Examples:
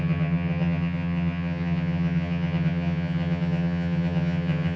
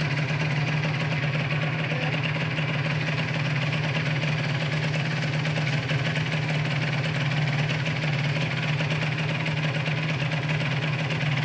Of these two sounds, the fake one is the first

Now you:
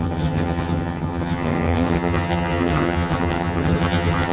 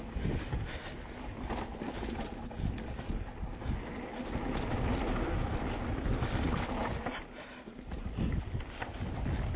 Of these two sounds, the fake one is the first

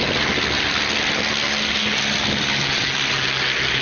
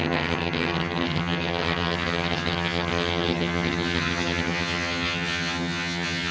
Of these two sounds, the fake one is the second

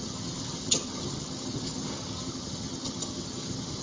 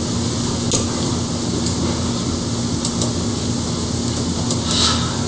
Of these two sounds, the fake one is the first